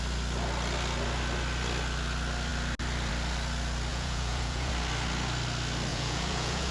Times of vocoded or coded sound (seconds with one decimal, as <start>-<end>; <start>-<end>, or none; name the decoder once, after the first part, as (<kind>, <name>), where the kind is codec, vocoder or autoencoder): 3.9-4.7 (vocoder, Vocos); 5.9-6.7